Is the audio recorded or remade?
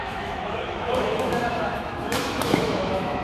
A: remade